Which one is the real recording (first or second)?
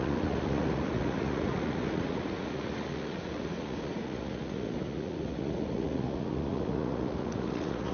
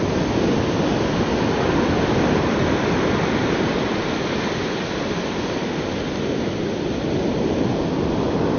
second